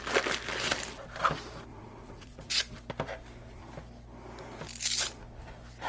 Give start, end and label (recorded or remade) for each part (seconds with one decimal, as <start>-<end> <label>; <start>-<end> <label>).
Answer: 0.0-1.7 recorded; 1.7-2.6 remade; 2.6-5.9 recorded